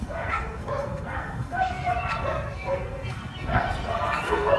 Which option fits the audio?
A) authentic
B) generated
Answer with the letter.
B